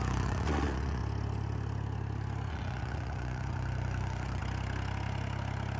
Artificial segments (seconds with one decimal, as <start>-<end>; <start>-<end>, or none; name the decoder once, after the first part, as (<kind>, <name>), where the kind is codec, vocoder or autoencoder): 0.0-1.0 (vocoder, Vocos); 2.5-4.4

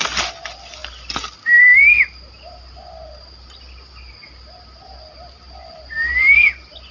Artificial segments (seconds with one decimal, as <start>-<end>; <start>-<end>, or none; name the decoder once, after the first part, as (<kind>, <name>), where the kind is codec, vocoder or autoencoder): none